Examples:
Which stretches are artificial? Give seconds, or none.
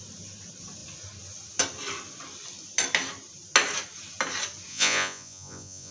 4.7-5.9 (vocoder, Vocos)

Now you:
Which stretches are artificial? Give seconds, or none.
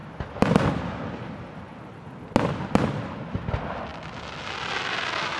none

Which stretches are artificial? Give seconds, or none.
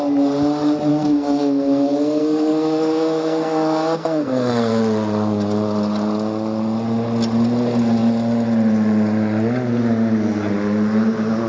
0.9-4.8 (codec, SNAC)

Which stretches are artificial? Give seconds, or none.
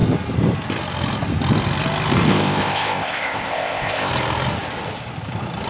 2.3-4.1 (codec, ZipCodec)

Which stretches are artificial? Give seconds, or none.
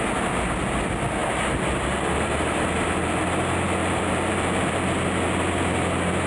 1.2-2.9 (vocoder, BigVGAN v2); 3.8-4.4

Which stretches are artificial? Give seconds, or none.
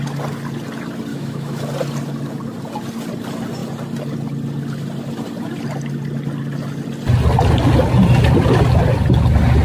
1.1-1.6 (autoencoder, DAC-VAE)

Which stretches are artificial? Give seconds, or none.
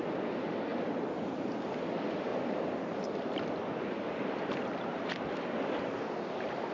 0.7-1.7 (vocoder, BigVGAN v2); 2.3-5.1